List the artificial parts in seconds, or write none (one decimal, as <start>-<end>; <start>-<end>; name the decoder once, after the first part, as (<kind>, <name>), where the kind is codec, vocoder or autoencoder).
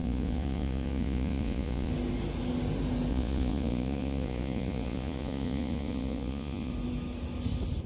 0.0-1.9 (vocoder, Vocos); 3.1-6.7